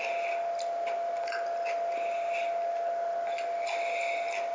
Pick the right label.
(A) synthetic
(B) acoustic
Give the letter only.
B